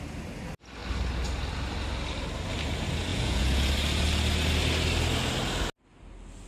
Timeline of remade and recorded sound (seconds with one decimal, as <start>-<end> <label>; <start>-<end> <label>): 0.0-3.1 recorded; 3.1-3.7 remade; 3.7-6.5 recorded